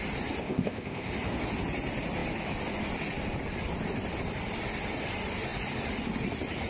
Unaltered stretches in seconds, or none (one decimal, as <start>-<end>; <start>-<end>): 0.0-0.4; 1.1-6.7